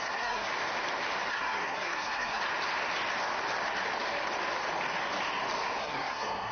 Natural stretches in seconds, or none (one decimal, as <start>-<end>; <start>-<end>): 0.5-1.3; 2.4-5.8